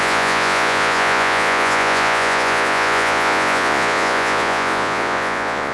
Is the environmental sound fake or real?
fake